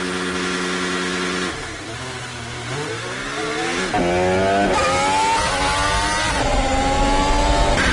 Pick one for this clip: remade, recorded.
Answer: recorded